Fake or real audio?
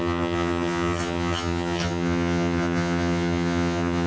fake